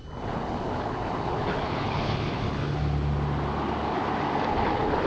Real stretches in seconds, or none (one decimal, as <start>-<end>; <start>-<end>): 2.8-4.5